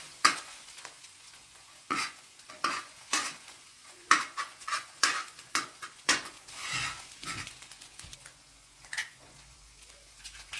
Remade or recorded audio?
remade